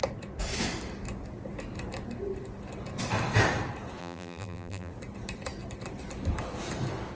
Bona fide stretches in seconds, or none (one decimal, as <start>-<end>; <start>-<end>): 0.0-4.0; 4.9-7.2